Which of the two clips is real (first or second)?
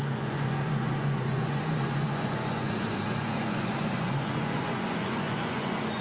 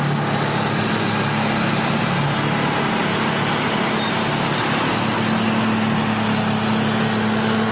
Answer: second